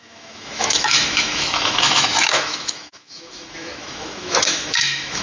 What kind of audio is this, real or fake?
fake